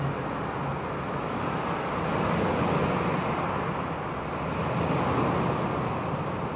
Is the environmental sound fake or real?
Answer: real